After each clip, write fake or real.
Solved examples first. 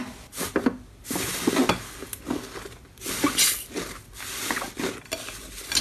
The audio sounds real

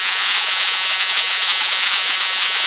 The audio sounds fake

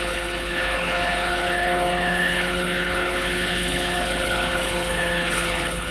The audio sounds fake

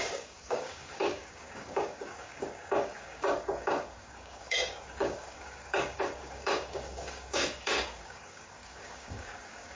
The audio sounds fake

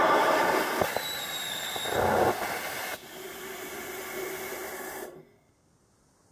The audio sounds real